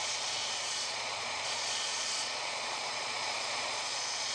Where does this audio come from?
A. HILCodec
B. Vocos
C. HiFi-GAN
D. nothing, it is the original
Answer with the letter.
B